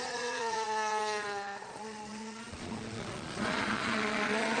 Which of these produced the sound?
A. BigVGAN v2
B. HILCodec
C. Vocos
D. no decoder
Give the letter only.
C